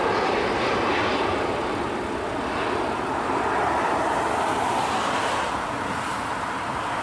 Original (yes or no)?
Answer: yes